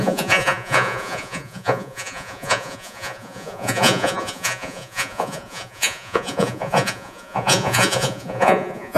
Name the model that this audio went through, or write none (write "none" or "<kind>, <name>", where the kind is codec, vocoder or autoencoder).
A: vocoder, Vocos